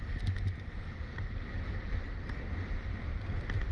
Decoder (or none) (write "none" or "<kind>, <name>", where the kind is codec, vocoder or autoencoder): none